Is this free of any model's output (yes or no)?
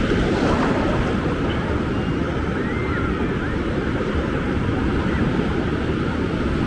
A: yes